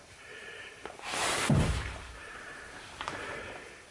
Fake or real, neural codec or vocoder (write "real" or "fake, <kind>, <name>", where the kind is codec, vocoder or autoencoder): fake, vocoder, BigVGAN v2